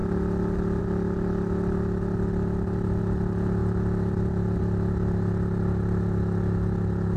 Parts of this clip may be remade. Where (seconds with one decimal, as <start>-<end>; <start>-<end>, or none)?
none